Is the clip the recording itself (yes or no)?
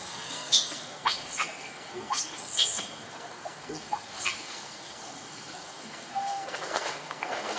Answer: no